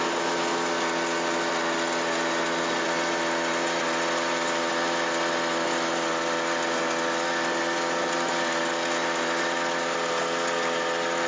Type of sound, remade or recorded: recorded